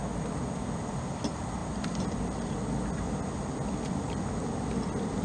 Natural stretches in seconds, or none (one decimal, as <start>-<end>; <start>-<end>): 0.0-5.2